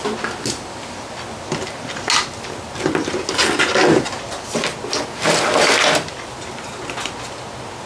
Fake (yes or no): no